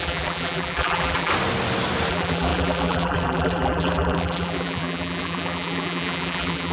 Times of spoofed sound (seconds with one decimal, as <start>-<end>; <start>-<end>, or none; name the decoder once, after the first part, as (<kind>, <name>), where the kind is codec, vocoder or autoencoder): 0.0-1.3 (vocoder, BigVGAN v2); 2.1-6.7